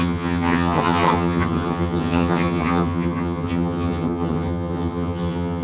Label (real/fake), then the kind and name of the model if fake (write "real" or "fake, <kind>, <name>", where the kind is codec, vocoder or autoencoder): fake, vocoder, HiFi-GAN